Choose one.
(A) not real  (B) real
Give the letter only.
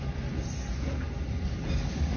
B